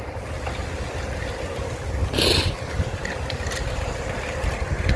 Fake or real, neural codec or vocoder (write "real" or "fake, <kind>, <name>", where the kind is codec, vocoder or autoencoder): real